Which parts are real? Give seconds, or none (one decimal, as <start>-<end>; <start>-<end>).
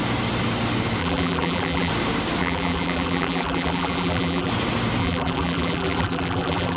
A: 0.0-1.0; 1.9-2.4; 4.5-5.0